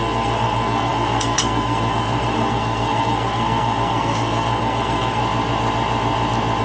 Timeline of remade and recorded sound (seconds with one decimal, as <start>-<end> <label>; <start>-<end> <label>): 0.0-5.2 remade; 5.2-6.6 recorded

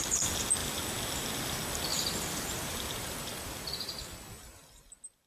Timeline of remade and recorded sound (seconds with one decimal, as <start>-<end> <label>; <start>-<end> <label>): 0.0-1.9 recorded; 1.9-4.0 remade; 4.0-5.3 recorded

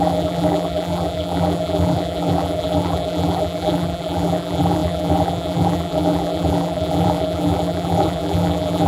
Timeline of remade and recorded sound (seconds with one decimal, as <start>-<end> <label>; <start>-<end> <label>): 0.0-8.9 remade

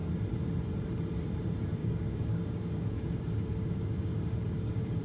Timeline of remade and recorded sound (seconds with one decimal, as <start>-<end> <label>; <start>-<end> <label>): 0.0-1.8 recorded; 1.8-5.0 remade

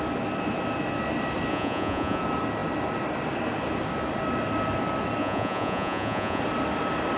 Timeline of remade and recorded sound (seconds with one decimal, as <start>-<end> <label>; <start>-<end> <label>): 0.0-1.5 recorded; 1.5-2.2 remade; 2.2-5.2 recorded; 5.2-6.4 remade; 6.4-7.2 recorded

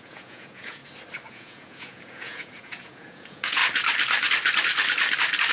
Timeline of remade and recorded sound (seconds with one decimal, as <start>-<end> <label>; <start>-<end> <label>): 0.0-0.8 remade; 0.8-1.3 recorded; 1.3-3.6 remade; 3.6-5.5 recorded